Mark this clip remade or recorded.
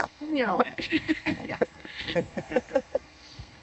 remade